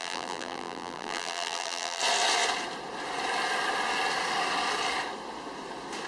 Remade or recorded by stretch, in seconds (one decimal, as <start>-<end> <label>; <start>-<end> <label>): 0.0-2.0 remade; 2.0-6.1 recorded